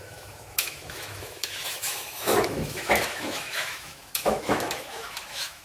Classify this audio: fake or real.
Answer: fake